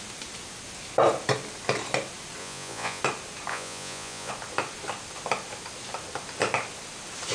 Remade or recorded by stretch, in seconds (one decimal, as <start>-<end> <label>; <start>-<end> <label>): 0.0-2.4 recorded; 2.4-3.0 remade; 3.0-3.5 recorded; 3.5-4.3 remade; 4.3-7.3 recorded